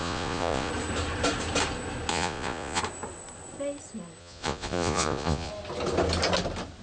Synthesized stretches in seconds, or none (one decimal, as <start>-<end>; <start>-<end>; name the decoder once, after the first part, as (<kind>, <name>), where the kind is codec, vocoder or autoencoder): 0.0-0.7 (vocoder, Vocos); 2.1-2.8; 4.2-5.5